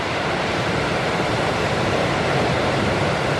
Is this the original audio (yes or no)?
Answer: no